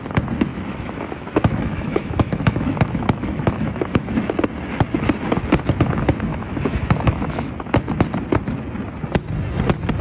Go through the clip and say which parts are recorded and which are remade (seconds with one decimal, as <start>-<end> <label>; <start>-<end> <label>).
0.0-0.5 recorded; 0.5-4.3 remade; 4.3-6.3 recorded; 6.3-7.5 remade; 7.5-10.0 recorded